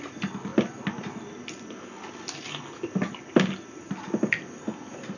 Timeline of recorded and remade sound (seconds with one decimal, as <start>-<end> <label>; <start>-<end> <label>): 0.0-5.2 recorded